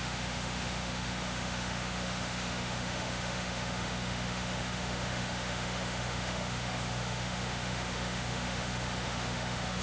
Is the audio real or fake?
fake